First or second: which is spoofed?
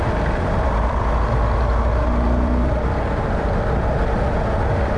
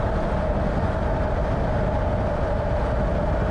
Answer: first